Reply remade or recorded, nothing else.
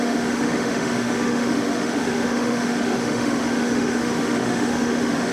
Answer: remade